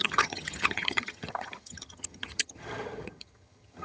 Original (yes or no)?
no